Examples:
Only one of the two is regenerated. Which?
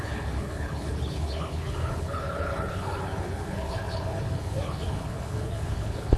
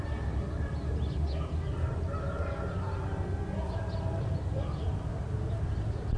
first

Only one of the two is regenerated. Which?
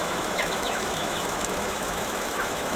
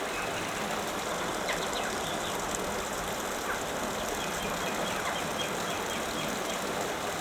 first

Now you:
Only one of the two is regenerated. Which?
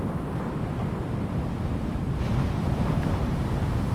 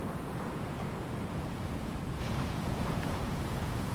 second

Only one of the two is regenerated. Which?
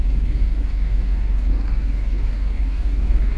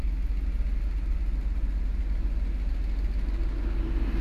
first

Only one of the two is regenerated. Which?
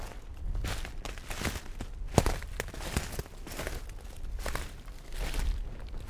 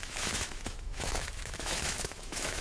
second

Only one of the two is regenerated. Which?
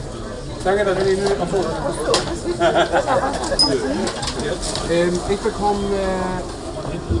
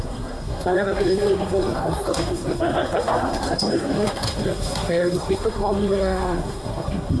second